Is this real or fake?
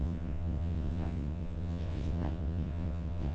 fake